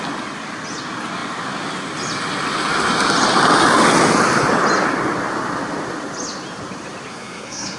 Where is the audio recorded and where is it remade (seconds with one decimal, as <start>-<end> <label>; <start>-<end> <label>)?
0.0-7.1 recorded; 7.1-7.8 remade